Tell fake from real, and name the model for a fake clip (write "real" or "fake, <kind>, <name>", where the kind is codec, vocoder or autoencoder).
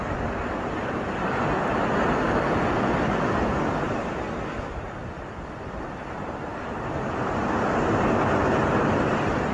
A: real